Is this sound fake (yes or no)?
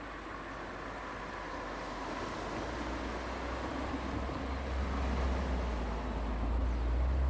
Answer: no